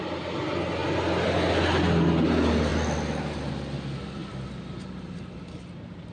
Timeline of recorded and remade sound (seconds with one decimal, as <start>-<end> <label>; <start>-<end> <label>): 0.0-6.1 recorded